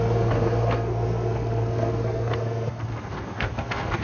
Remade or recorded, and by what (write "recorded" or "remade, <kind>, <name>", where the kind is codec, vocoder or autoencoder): remade, codec, SNAC